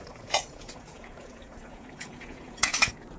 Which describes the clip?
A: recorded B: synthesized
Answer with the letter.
B